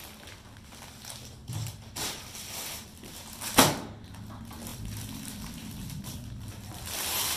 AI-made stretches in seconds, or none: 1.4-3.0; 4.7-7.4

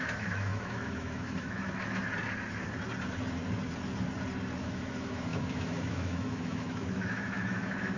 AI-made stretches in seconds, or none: 0.0-2.0; 4.6-8.0